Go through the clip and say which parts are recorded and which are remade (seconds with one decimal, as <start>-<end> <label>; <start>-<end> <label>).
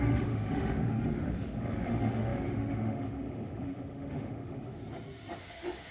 0.0-4.8 remade; 4.8-5.4 recorded; 5.4-5.9 remade